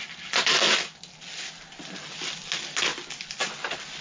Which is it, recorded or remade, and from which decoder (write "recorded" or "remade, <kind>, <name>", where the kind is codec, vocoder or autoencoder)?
recorded